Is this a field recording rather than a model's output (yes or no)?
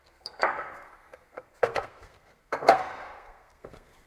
no